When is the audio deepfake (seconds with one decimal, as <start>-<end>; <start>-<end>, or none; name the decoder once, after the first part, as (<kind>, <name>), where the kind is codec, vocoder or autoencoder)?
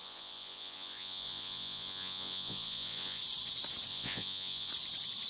0.0-3.2 (vocoder, Vocos); 3.9-4.7